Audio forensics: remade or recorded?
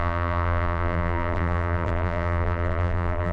remade